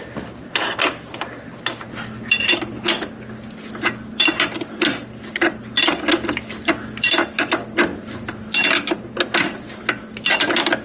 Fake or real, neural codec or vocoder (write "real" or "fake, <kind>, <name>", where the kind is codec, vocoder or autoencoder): real